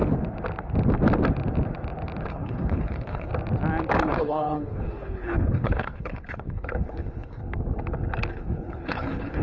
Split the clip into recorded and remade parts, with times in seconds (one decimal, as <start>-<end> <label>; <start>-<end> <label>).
0.0-2.3 recorded; 2.3-3.3 remade; 3.3-4.0 recorded; 4.0-7.4 remade; 7.4-8.3 recorded; 8.3-9.4 remade